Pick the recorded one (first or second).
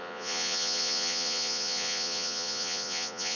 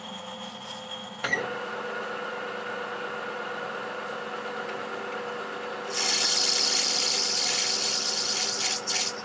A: second